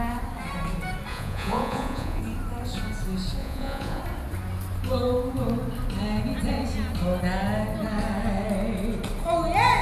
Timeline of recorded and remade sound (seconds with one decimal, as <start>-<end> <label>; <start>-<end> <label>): 0.0-1.1 recorded; 1.1-2.2 remade; 2.2-3.4 recorded; 3.4-4.0 remade; 4.0-9.8 recorded